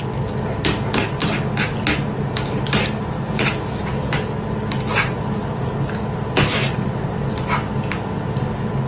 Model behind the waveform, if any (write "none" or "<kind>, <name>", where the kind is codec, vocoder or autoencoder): none